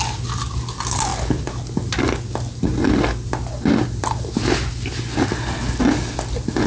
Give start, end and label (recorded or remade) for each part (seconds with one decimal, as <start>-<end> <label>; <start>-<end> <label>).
0.0-6.7 recorded

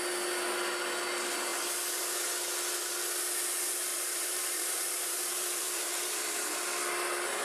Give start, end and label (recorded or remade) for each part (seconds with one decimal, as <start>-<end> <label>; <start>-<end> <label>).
0.0-3.9 recorded; 3.9-6.5 remade; 6.5-7.4 recorded

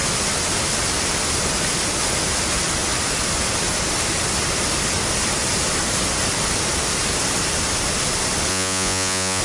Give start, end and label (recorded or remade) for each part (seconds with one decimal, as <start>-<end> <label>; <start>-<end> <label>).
0.0-8.5 recorded; 8.5-9.4 remade

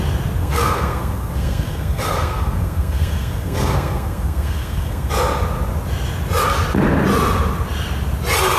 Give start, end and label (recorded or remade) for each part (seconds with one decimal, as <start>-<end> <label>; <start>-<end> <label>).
0.0-0.4 recorded; 0.4-5.1 remade; 5.1-8.6 recorded

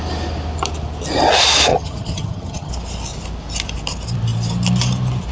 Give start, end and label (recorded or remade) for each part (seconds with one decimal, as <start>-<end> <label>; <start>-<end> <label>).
0.0-1.7 recorded; 1.7-2.7 remade; 2.7-5.3 recorded